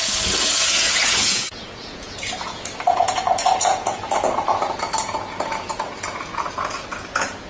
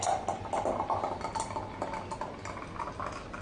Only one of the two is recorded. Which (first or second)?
second